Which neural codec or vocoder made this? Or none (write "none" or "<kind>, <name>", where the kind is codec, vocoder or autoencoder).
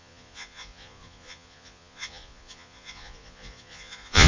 vocoder, Vocos